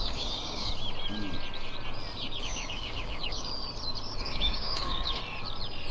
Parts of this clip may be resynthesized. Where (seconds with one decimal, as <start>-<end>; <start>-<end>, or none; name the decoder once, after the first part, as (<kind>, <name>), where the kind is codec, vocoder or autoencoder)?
0.0-0.7 (codec, DAC); 2.4-3.5; 4.2-5.2